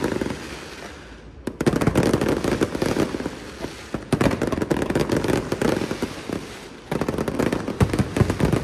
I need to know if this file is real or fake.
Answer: real